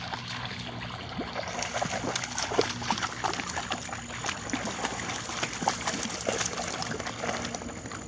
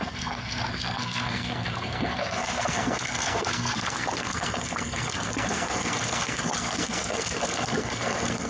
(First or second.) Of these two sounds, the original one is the first